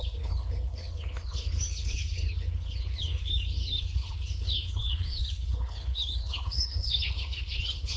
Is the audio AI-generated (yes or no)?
yes